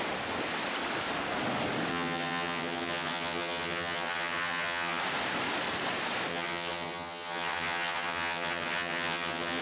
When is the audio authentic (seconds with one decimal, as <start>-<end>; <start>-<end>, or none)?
0.0-1.9; 5.0-6.3